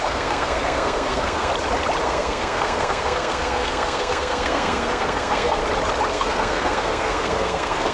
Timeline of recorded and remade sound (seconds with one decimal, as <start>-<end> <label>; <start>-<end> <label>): 0.0-1.5 remade; 1.5-2.0 recorded; 2.0-5.6 remade; 5.6-6.1 recorded; 6.1-7.9 remade